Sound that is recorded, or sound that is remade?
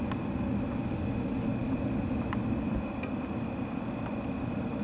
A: recorded